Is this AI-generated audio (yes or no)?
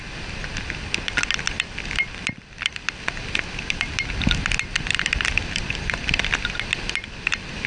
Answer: no